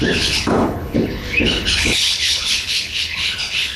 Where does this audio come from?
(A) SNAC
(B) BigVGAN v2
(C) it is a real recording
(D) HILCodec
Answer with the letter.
D